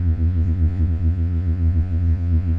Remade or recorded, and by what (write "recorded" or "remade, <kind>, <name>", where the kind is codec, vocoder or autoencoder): remade, vocoder, Vocos